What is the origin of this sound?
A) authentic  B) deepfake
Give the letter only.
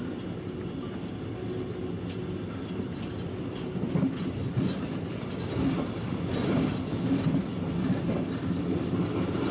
A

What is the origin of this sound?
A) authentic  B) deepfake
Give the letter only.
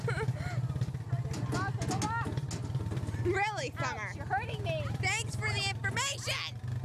A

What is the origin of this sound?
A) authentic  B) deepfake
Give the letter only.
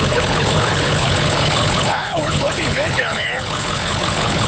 B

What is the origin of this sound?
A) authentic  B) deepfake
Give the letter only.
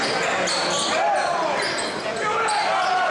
A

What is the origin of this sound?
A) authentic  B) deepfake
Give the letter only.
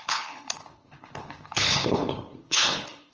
B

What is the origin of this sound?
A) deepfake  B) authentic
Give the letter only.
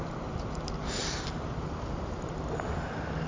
B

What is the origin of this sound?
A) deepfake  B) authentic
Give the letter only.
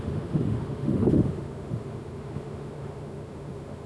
A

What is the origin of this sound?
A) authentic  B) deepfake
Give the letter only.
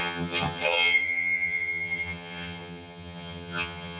B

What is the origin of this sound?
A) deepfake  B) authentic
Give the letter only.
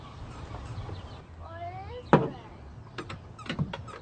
B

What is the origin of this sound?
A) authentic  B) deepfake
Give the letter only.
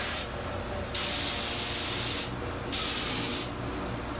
A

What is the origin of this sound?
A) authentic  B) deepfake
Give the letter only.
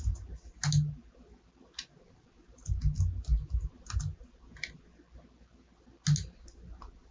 A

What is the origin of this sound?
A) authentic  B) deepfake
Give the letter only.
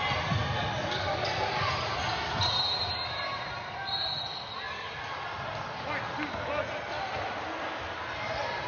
A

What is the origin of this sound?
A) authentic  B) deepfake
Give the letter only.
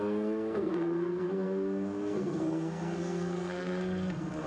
B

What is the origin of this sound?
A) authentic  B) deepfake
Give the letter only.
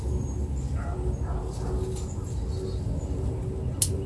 A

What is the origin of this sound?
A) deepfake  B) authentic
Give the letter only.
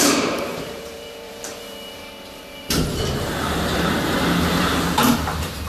A